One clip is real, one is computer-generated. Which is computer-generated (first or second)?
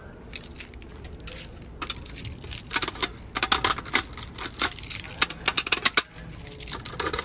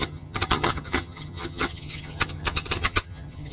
second